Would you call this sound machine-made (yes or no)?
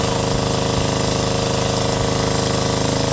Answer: no